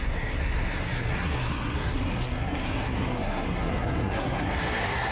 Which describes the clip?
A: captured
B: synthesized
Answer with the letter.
B